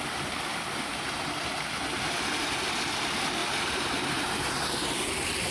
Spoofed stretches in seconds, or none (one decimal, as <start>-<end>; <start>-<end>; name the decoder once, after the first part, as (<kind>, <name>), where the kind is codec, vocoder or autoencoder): 3.4-4.5 (vocoder, BigVGAN v2)